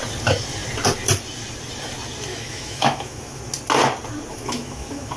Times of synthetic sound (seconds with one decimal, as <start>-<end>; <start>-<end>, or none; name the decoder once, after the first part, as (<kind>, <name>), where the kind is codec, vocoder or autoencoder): 2.3-3.4 (autoencoder, DAC-VAE); 4.3-5.2